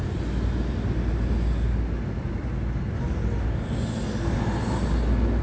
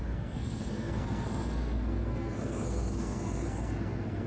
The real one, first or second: first